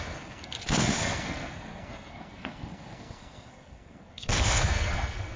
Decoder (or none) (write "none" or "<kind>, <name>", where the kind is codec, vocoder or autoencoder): codec, SNAC